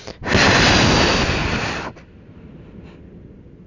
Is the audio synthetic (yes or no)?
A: no